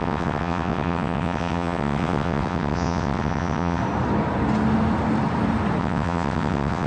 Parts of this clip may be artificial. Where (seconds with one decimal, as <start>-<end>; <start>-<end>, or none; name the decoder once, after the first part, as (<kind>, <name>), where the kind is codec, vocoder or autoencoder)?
0.0-3.8 (vocoder, WaveNeXt); 5.8-6.9